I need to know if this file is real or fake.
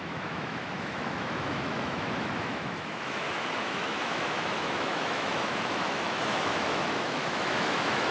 fake